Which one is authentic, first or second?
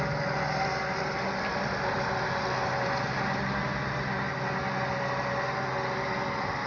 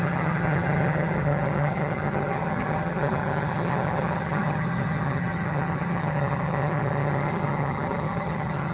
first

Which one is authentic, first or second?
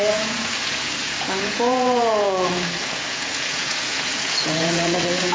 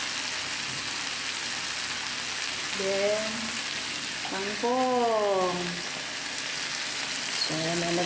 second